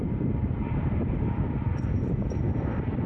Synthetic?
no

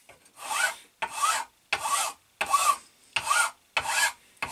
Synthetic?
no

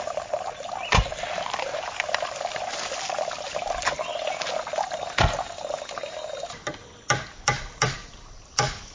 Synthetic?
no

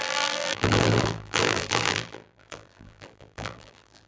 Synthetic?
yes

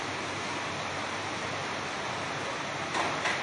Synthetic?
yes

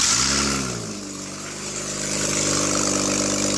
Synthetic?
no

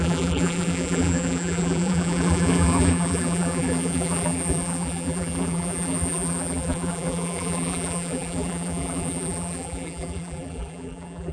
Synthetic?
yes